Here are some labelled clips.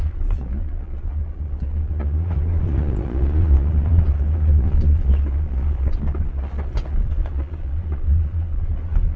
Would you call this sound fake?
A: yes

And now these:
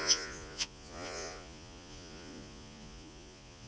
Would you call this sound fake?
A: yes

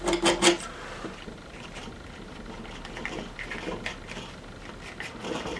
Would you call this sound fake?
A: no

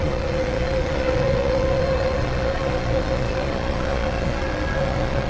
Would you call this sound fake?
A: yes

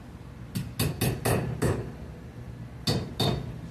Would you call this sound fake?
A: no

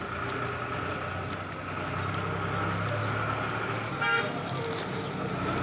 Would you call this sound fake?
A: no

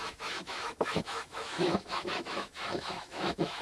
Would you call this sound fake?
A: yes